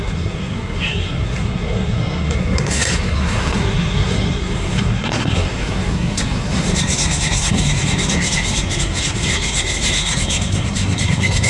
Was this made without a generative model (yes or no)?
no